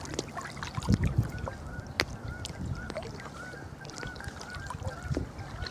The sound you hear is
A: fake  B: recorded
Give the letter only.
B